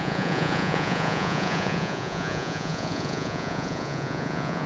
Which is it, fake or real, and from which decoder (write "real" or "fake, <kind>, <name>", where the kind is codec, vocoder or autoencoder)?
fake, vocoder, Vocos